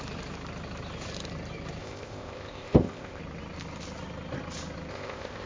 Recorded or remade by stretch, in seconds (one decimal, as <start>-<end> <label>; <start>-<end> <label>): 0.0-1.8 recorded; 1.8-3.2 remade; 3.2-4.9 recorded; 4.9-5.5 remade